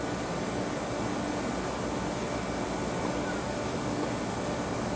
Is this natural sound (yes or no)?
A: yes